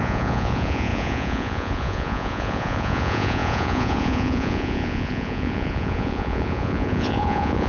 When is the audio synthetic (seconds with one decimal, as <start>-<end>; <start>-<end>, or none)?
0.0-7.7